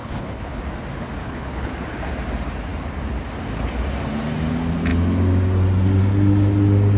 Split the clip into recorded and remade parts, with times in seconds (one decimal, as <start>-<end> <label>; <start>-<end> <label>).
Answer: 0.0-0.6 remade; 0.6-1.2 recorded; 1.2-1.7 remade; 1.7-7.0 recorded